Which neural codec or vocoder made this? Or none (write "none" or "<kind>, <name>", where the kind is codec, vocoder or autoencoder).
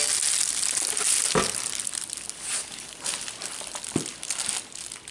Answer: none